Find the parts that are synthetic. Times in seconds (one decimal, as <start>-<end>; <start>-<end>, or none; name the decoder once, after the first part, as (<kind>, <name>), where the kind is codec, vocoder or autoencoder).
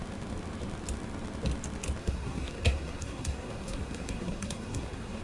2.0-5.2 (codec, SNAC)